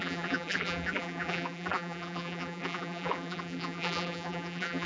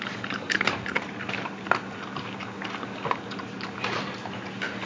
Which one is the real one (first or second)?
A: second